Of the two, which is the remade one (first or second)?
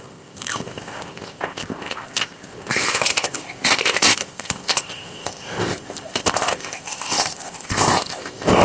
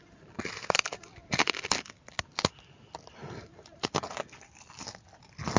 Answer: first